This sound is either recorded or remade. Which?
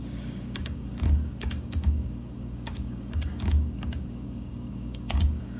remade